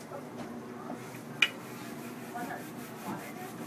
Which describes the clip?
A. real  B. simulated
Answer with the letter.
A